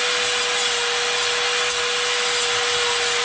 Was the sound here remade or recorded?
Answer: recorded